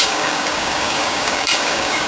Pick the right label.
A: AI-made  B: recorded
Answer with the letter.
A